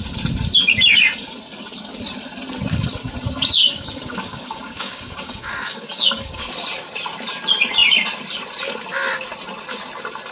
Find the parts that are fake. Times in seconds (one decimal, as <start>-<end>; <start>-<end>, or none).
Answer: 3.6-6.4